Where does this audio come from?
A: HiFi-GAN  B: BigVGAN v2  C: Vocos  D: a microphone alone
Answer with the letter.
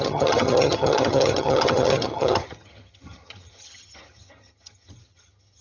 A